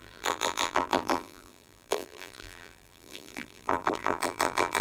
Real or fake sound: fake